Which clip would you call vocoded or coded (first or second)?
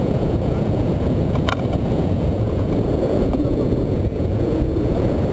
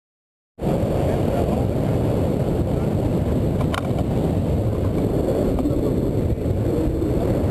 first